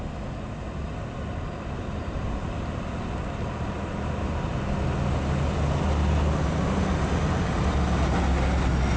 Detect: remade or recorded recorded